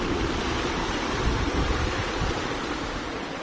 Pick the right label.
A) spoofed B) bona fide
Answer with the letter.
A